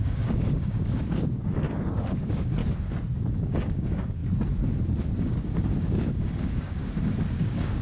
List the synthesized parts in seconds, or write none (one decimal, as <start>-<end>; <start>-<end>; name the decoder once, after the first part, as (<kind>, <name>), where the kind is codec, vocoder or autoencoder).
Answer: 0.0-2.6 (codec, DAC); 3.3-4.2; 5.2-6.8; 7.3-7.8